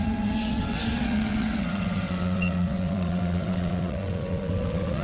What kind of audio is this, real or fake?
fake